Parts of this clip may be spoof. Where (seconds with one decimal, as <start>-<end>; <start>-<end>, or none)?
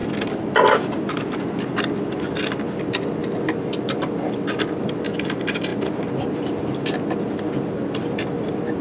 none